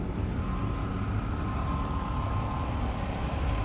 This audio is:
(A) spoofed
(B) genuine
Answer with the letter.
B